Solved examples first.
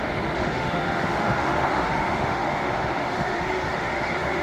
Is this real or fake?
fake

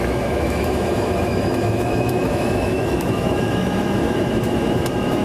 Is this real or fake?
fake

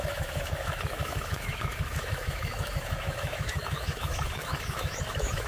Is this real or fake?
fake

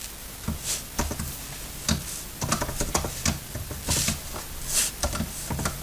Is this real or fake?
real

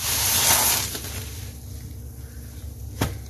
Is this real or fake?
real